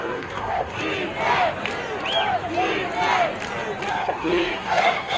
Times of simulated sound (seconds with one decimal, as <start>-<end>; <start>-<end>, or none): 0.0-0.8; 3.9-5.2